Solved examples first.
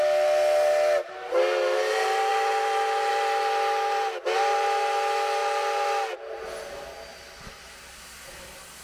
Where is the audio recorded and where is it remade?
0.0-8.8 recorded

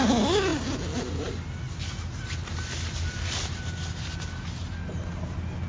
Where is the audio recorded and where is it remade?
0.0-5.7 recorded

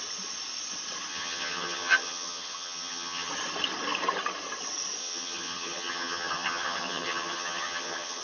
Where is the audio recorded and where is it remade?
0.0-1.1 recorded; 1.1-3.3 remade; 3.3-5.0 recorded; 5.0-8.2 remade